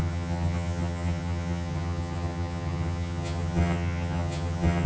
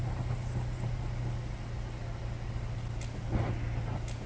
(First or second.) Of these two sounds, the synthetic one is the first